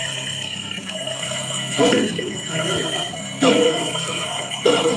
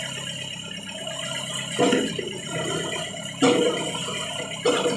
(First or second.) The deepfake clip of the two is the first